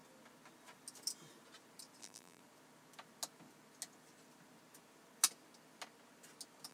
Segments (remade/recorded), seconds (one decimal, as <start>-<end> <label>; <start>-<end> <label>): 0.0-2.0 recorded; 2.0-2.4 remade; 2.4-6.7 recorded